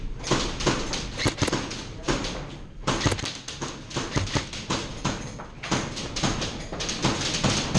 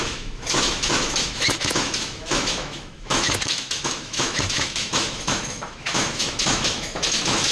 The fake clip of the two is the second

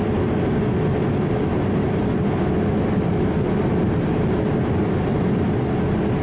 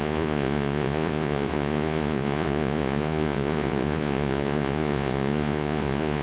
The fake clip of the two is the second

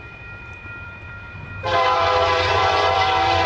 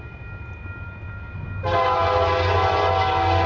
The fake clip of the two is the first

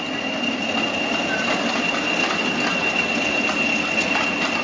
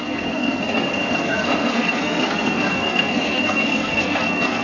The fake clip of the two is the second